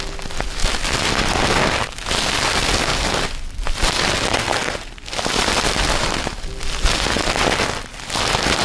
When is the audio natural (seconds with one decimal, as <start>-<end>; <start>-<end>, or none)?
0.0-8.6